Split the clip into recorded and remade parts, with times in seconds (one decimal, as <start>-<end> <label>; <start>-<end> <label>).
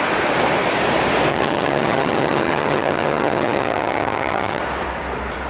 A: 0.0-1.3 recorded; 1.3-4.6 remade; 4.6-5.5 recorded